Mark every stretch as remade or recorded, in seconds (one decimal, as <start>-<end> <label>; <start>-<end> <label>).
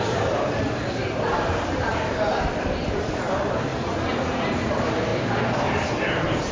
0.0-3.7 remade; 3.7-4.5 recorded; 4.5-6.5 remade